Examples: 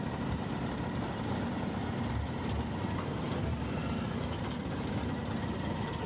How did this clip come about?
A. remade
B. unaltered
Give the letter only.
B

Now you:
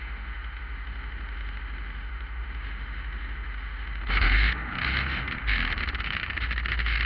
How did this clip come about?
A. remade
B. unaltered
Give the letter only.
A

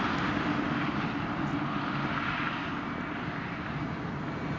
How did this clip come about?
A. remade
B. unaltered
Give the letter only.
B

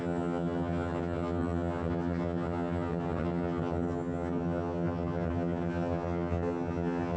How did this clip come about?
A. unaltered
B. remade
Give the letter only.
B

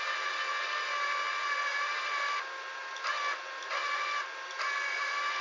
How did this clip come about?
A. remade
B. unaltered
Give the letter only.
B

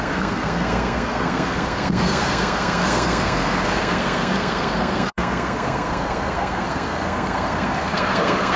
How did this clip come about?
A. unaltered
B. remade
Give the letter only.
B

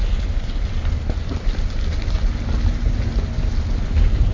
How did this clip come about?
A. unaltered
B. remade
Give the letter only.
A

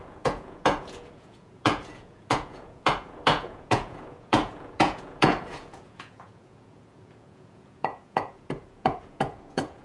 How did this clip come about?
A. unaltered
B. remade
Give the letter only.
B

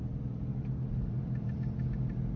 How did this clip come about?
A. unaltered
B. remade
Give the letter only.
B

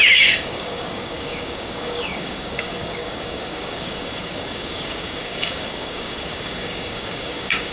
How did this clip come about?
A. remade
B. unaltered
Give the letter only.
A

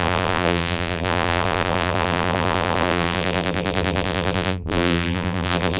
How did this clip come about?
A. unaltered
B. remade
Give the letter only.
B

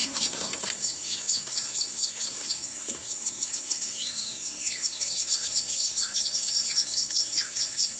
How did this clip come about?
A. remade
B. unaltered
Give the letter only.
A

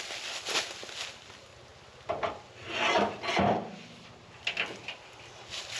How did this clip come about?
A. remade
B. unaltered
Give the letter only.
B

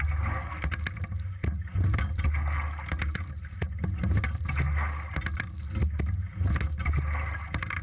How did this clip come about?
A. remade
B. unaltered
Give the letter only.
B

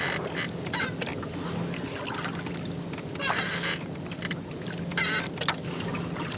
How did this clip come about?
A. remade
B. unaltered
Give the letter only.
B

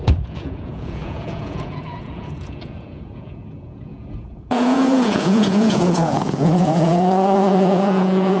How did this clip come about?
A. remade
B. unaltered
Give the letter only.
A